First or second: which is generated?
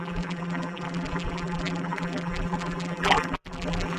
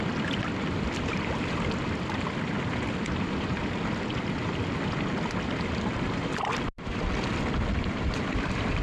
first